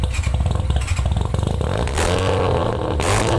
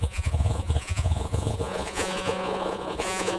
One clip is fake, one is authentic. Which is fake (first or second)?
second